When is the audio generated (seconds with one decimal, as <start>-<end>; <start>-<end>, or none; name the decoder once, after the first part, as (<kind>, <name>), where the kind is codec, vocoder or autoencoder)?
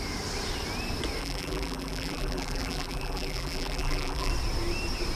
1.2-4.3 (vocoder, BigVGAN v2)